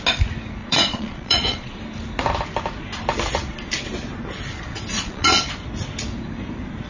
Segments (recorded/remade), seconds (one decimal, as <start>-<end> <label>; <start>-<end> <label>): 0.0-0.6 recorded; 0.6-1.8 remade; 1.8-4.9 recorded; 4.9-5.4 remade; 5.4-6.9 recorded